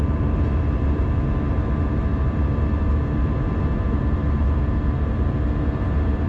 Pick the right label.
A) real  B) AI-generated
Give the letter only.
B